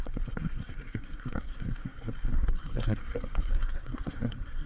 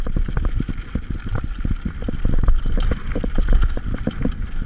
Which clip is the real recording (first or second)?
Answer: second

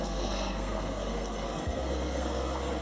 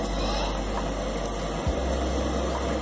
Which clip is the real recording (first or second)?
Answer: second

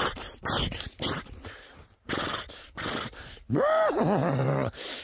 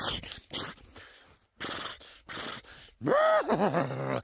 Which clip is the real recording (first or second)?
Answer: second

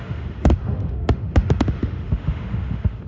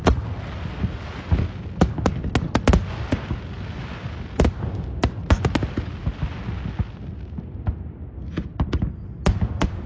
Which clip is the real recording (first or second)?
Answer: second